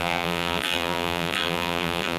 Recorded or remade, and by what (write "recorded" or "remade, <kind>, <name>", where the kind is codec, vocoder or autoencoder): remade, vocoder, BigVGAN v2